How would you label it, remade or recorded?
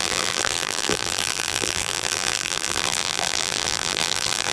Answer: remade